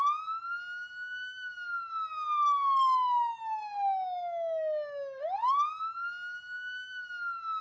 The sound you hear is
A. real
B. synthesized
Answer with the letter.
A